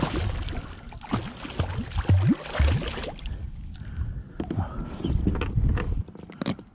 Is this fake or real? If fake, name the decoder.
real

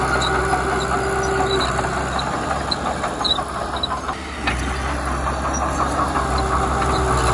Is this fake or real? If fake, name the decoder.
real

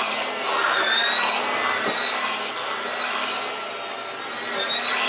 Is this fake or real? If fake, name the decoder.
real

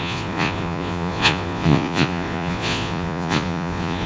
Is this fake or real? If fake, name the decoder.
fake, vocoder, Vocos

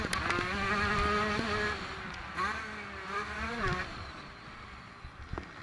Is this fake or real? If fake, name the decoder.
real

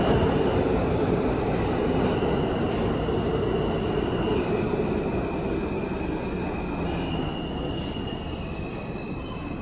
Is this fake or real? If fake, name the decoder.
real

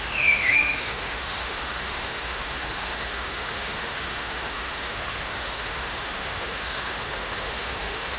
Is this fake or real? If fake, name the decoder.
fake, autoencoder, DAC-VAE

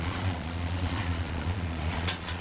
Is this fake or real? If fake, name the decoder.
fake, vocoder, Vocos